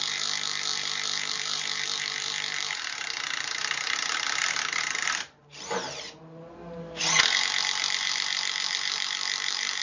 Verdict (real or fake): fake